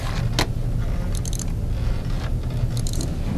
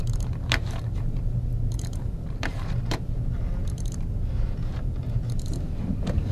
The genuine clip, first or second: first